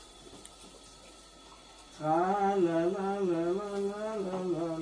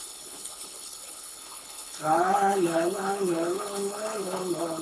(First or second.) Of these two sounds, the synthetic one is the second